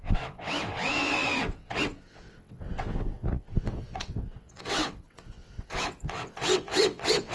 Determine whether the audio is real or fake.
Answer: fake